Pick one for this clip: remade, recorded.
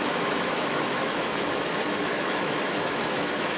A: remade